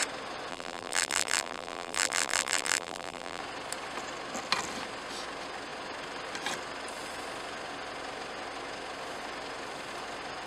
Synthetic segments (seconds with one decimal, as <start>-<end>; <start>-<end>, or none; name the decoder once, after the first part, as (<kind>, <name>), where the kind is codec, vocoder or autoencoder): 0.5-3.4 (vocoder, BigVGAN v2)